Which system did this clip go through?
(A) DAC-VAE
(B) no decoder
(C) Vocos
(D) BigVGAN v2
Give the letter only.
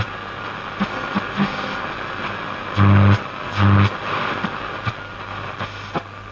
B